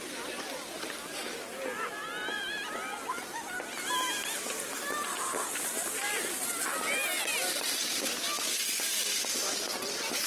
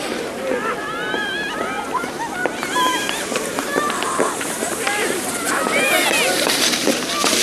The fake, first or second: second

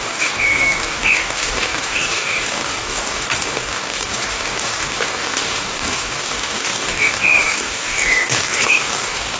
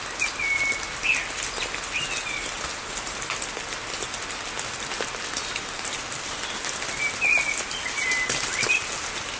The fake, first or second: first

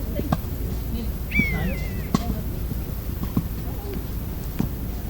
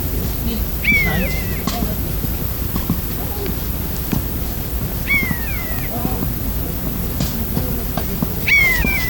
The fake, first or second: second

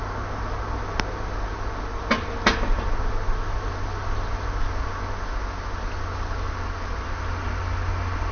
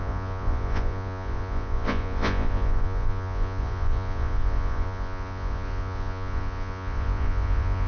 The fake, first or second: second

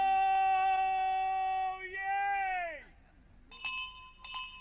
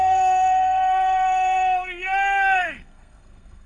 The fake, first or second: second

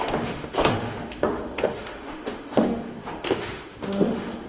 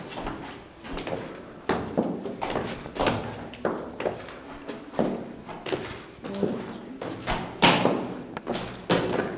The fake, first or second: first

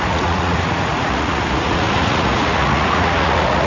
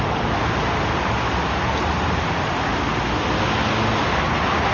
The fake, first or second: first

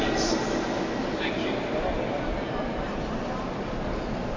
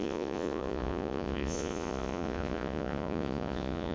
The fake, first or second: second